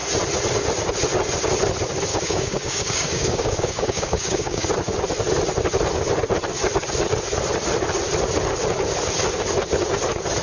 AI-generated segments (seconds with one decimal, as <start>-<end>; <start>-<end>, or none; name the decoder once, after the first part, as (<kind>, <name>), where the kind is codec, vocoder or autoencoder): 2.1-4.7 (codec, DAC)

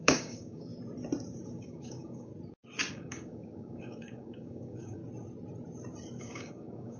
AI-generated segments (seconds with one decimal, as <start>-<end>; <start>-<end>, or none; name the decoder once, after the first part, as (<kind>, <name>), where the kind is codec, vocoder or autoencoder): 0.0-0.7 (codec, DAC); 1.6-2.3; 2.9-5.0; 6.2-7.0